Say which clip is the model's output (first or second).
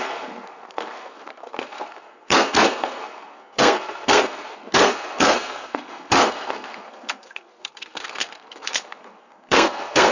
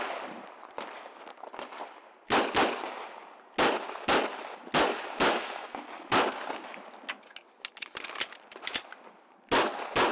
first